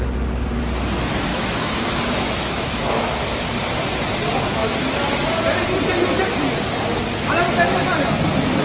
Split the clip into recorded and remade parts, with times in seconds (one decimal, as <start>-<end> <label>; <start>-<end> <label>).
0.0-1.3 recorded; 1.3-3.2 remade; 3.2-8.6 recorded